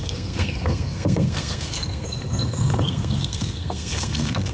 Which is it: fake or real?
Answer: fake